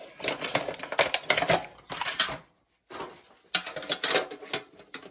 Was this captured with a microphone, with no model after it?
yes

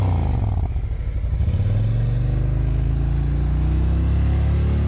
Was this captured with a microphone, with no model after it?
yes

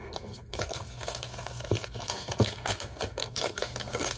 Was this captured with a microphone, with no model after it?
no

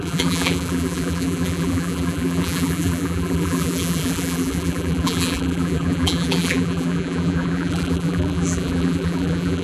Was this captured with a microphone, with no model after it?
no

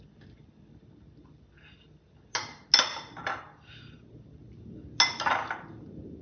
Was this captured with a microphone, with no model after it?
yes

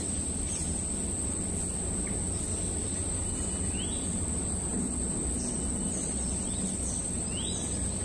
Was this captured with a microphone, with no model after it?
yes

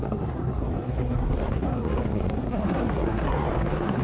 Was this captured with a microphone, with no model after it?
no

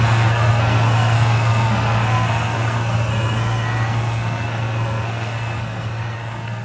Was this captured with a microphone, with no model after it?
no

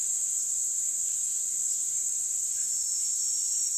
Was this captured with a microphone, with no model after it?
no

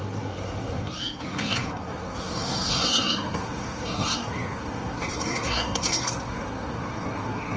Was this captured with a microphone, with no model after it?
no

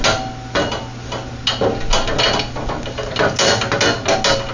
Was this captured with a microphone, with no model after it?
yes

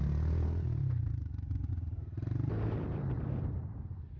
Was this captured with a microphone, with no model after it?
yes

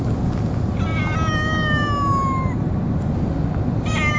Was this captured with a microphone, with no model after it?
yes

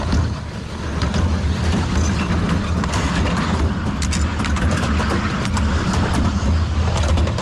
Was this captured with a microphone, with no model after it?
yes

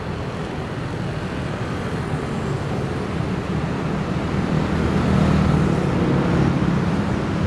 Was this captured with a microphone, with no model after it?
yes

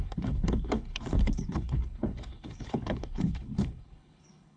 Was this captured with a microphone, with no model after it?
no